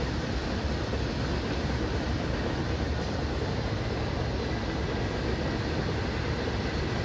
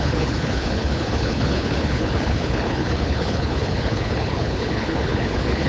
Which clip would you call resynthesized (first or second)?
second